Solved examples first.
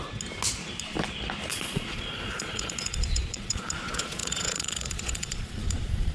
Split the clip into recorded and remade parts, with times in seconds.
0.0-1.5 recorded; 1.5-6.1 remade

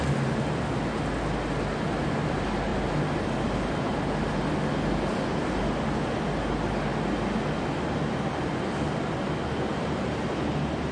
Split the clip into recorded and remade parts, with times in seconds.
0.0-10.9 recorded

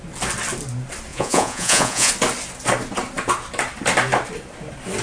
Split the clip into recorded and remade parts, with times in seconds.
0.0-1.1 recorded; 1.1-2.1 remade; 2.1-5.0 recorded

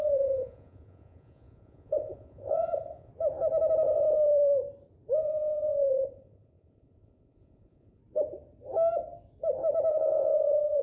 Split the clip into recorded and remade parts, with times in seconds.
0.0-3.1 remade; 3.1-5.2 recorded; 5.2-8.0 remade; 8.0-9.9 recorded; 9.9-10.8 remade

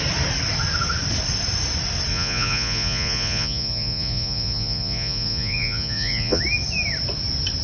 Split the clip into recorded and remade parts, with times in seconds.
0.0-2.1 recorded; 2.1-6.4 remade; 6.4-7.6 recorded

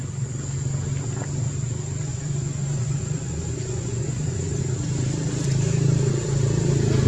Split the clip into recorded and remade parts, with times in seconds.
0.0-2.1 recorded; 2.1-4.6 remade; 4.6-7.1 recorded

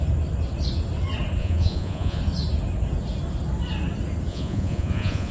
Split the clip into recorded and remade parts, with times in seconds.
0.0-1.4 recorded; 1.4-2.2 remade; 2.2-4.3 recorded; 4.3-5.3 remade

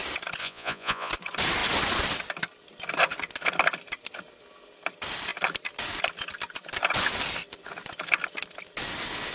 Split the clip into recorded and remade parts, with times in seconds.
0.0-0.4 recorded; 0.4-1.1 remade; 1.1-9.3 recorded